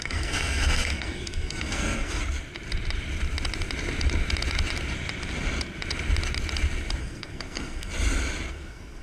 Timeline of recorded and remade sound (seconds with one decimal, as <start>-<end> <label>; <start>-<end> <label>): 0.0-2.2 remade; 2.2-7.0 recorded; 7.0-7.9 remade; 7.9-8.5 recorded; 8.5-9.0 remade